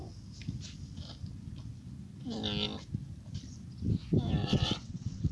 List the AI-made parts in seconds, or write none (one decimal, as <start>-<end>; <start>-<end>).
4.4-5.3